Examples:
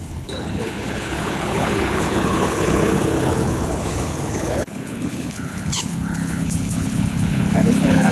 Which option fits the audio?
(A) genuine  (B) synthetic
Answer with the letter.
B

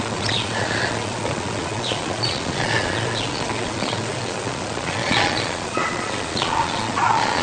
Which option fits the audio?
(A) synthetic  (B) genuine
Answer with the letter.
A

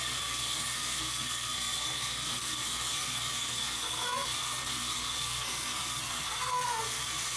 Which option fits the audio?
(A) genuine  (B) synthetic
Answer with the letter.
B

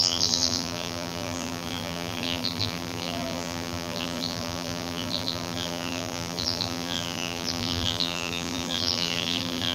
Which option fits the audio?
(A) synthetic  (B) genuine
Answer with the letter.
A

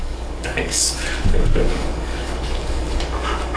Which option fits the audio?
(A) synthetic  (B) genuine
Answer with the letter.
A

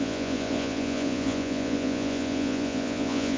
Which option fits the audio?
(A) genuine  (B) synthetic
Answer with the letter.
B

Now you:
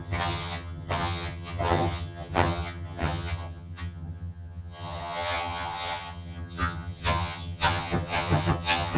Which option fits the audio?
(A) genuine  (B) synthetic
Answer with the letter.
B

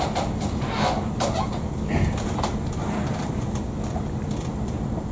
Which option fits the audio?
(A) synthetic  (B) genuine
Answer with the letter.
B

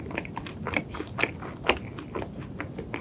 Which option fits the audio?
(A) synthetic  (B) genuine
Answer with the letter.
B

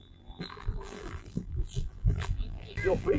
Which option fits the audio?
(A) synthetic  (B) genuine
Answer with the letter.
A